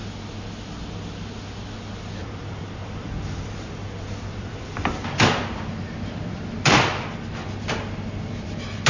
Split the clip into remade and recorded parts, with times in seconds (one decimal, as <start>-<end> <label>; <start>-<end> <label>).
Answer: 0.0-2.2 recorded; 2.2-7.1 remade; 7.1-8.9 recorded